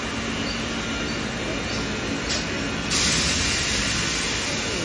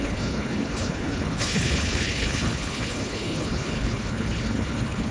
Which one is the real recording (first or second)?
first